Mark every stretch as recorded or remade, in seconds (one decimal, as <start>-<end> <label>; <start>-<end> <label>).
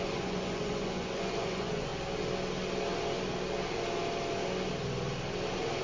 0.0-1.9 remade; 1.9-5.8 recorded